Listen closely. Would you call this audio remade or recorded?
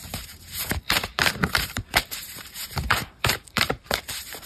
remade